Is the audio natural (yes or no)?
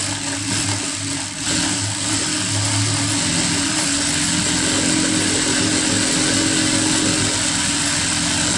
yes